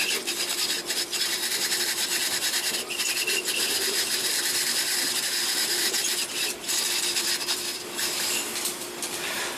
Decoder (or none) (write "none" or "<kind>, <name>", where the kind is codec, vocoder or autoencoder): vocoder, BigVGAN v2